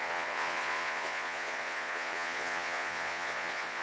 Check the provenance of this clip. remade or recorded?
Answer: remade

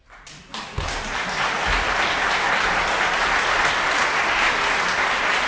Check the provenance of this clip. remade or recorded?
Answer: recorded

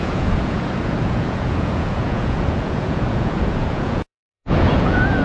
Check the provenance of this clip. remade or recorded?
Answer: remade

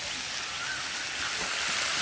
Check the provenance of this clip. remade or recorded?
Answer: recorded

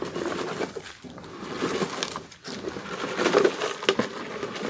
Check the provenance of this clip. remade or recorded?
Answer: recorded